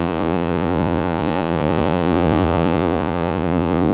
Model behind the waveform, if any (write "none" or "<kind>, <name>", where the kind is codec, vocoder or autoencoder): vocoder, Vocos